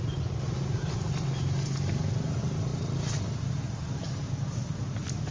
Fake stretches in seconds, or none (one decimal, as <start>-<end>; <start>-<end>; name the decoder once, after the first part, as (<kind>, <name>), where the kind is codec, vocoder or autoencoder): none